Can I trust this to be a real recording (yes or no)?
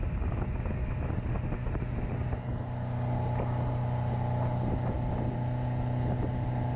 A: yes